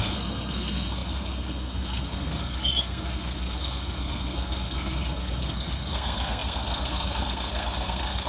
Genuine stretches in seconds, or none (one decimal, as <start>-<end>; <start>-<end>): none